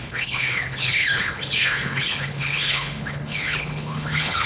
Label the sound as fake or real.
fake